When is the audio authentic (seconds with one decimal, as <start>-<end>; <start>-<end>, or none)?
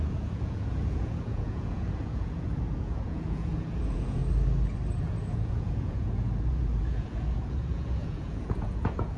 4.2-5.0